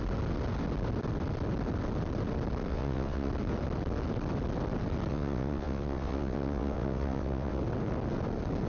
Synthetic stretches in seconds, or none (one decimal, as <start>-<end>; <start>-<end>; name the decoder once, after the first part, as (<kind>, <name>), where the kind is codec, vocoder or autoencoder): 2.7-3.3 (vocoder, WaveNeXt); 5.1-7.6